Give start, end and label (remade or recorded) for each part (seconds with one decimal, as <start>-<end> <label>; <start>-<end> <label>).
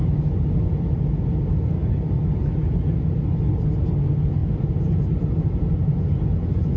0.0-4.4 recorded; 4.4-5.5 remade; 5.5-6.8 recorded